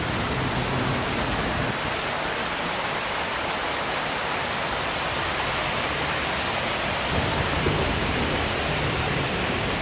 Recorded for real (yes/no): no